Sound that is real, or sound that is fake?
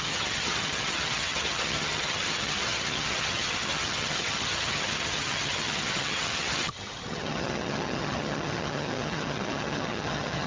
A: fake